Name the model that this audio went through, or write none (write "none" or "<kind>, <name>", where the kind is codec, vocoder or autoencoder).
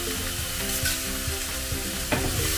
none